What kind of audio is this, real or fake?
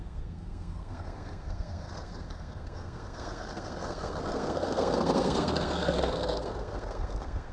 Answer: fake